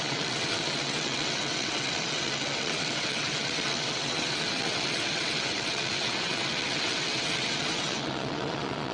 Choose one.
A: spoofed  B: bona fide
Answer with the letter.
A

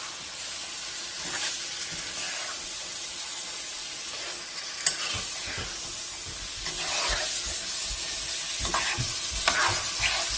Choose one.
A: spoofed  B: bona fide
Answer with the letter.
B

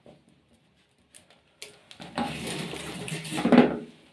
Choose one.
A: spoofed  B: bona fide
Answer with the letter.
B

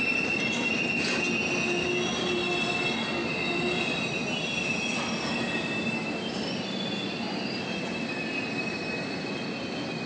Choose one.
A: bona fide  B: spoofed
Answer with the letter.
A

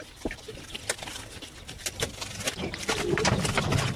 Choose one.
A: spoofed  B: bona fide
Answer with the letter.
B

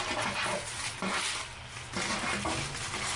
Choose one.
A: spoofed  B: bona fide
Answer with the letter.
B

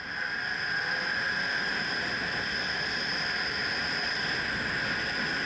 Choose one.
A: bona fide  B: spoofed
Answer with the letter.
A